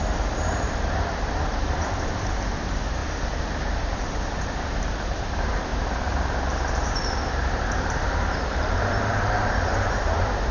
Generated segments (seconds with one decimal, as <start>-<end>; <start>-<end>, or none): 0.0-3.0; 3.8-10.5